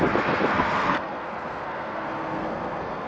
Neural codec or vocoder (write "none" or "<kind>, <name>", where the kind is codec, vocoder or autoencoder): codec, SNAC